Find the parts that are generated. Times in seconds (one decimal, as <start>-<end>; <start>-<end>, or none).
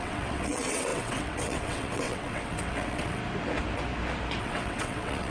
0.0-3.2; 4.4-5.3